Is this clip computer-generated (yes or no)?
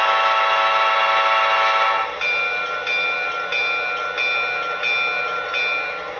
no